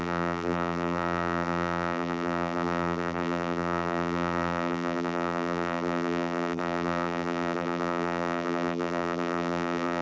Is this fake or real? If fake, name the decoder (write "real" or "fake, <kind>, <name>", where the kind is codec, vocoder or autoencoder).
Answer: fake, vocoder, BigVGAN v2